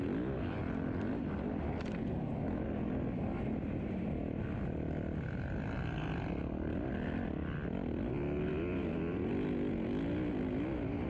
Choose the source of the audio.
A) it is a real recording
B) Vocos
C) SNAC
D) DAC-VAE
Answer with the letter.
A